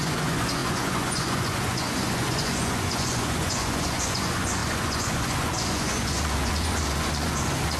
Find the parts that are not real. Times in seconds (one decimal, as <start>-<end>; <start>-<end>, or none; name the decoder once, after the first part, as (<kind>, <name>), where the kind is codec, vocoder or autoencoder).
0.0-7.8 (vocoder, Vocos)